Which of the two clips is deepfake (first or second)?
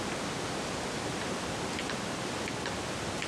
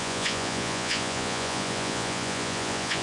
second